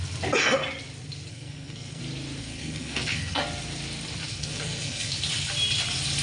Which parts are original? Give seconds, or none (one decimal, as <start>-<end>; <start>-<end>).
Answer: 0.0-1.3; 2.0-2.4; 3.4-4.3; 5.1-6.2